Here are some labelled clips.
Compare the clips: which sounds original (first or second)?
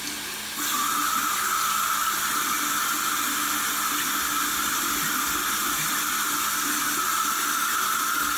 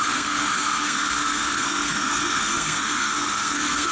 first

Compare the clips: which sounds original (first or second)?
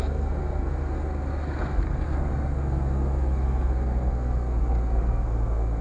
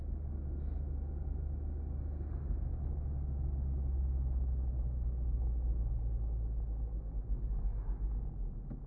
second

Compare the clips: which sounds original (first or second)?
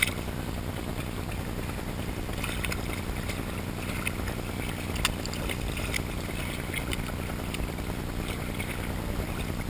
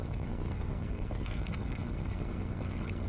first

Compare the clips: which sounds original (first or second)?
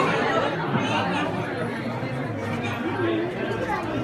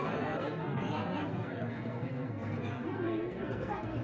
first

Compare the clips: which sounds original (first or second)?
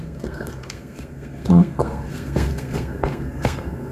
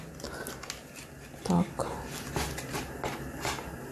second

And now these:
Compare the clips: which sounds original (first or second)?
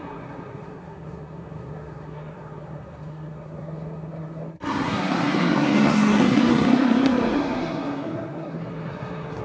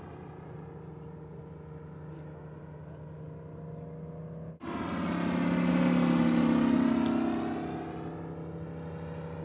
second